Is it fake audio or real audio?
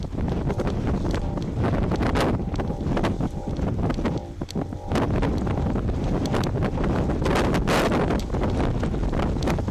real